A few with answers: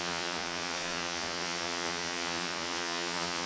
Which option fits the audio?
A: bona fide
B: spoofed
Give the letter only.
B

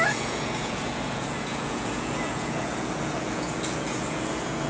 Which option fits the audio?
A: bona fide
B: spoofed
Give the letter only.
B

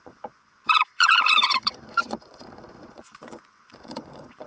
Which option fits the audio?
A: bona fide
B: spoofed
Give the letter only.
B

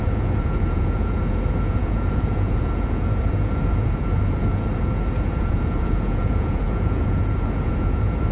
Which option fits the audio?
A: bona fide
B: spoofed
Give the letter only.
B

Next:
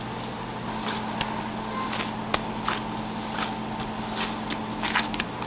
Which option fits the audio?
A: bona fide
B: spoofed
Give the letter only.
A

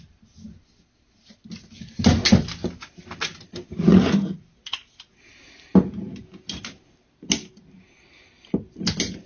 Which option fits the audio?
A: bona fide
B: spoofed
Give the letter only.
A